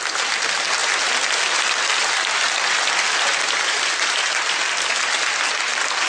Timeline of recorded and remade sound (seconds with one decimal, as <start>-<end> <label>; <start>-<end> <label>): 0.0-6.1 recorded